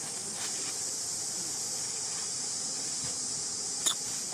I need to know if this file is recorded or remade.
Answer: recorded